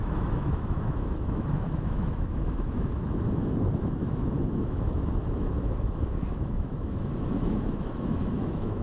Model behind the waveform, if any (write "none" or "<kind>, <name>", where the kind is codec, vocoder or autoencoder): autoencoder, DAC-VAE